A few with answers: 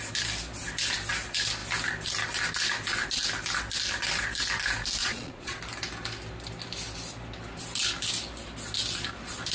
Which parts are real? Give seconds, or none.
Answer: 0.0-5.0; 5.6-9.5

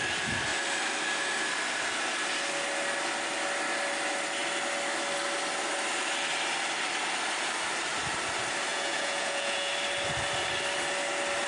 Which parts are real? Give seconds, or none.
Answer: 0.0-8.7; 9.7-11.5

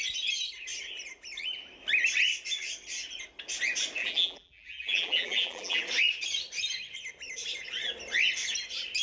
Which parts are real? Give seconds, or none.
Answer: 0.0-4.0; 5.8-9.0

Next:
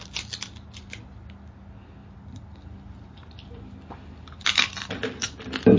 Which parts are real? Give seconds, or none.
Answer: 0.0-2.0

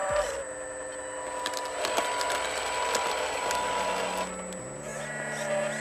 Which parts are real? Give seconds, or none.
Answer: 0.0-5.8

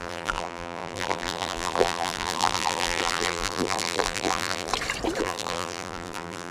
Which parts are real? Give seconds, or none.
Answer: 4.7-5.2

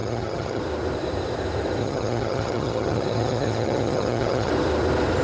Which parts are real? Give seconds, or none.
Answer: 0.6-1.8; 4.5-5.2

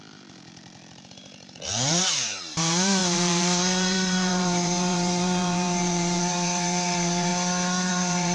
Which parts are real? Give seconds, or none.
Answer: 7.3-7.9